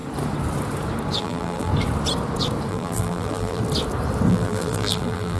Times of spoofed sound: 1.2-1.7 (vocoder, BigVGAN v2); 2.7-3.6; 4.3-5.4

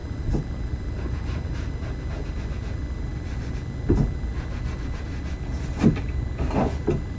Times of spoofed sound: 0.0-1.0 (vocoder, BigVGAN v2)

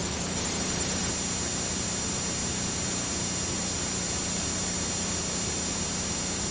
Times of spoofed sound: 0.0-1.1 (vocoder, BigVGAN v2)

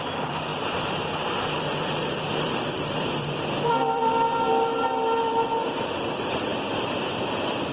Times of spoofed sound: 0.0-0.5 (vocoder, BigVGAN v2); 1.9-7.7